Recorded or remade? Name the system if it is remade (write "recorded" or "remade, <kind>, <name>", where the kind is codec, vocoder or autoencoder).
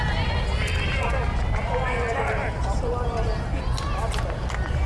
recorded